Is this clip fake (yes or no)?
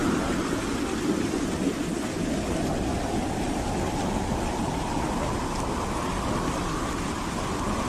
no